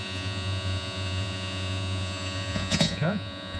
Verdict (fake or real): fake